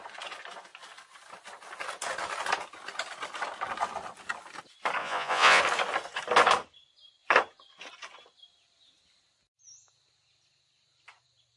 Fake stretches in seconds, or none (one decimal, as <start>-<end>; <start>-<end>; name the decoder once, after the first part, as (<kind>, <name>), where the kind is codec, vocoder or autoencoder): 5.0-5.6 (vocoder, Vocos)